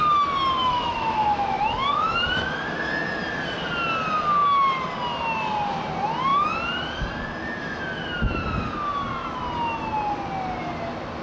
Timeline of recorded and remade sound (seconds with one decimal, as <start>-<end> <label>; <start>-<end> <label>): 0.0-0.6 recorded; 0.6-2.6 remade; 2.6-11.2 recorded